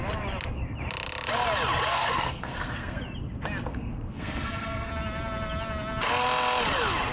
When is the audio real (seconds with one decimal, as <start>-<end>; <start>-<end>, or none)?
0.0-1.9; 3.0-3.7; 4.9-7.1